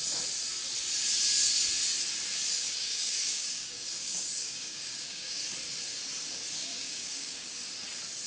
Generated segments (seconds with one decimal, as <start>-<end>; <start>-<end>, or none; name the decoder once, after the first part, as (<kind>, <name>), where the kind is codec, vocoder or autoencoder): 2.6-5.4 (codec, DAC); 6.6-7.6